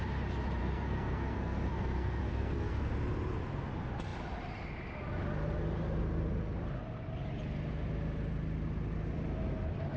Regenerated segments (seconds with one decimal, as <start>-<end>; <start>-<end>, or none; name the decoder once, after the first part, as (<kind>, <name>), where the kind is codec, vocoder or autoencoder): 0.6-2.9 (codec, SNAC)